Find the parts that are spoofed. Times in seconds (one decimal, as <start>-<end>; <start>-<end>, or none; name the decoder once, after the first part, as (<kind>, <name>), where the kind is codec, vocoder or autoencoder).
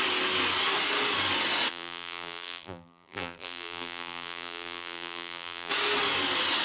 1.7-5.7 (vocoder, BigVGAN v2)